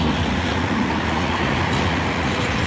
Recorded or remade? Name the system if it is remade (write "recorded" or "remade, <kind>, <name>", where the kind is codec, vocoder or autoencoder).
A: remade, vocoder, Vocos